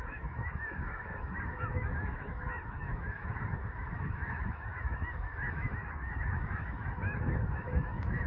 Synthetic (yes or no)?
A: yes